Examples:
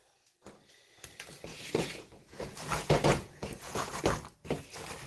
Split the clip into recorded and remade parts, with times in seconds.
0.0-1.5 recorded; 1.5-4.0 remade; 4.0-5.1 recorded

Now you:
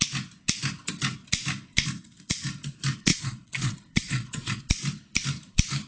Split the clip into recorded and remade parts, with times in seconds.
0.0-3.1 recorded; 3.1-4.7 remade; 4.7-5.9 recorded